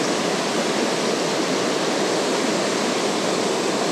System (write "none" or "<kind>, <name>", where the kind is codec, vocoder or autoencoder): none